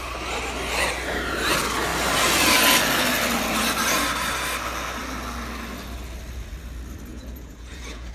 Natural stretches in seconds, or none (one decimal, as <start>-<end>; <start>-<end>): 0.0-7.1

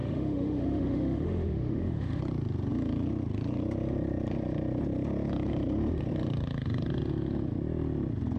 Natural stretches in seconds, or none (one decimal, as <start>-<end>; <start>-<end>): 2.2-8.4

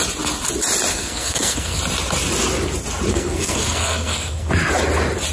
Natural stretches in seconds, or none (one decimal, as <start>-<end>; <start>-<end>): 0.0-0.9; 1.8-3.1; 4.5-5.3

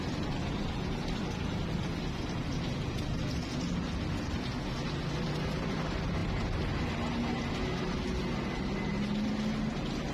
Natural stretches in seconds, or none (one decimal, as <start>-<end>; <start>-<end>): 0.0-10.1

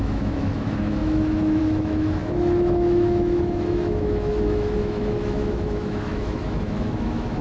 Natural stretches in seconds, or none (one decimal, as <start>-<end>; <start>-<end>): none

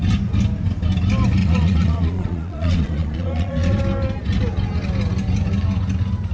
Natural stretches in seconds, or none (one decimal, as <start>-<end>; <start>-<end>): 0.0-1.4; 3.8-6.3

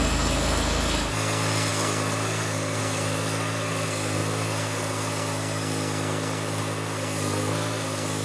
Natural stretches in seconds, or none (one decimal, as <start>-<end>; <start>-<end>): none

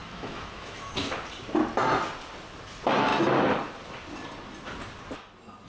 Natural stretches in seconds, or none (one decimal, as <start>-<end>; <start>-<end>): 1.0-5.7